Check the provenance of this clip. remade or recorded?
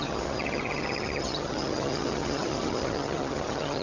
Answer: remade